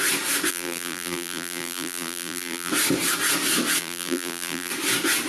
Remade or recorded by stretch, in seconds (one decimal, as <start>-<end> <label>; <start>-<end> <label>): 0.0-0.5 recorded; 0.5-2.7 remade; 2.7-3.8 recorded; 3.8-4.7 remade; 4.7-5.3 recorded